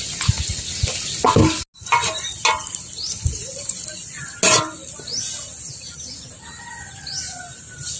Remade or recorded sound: recorded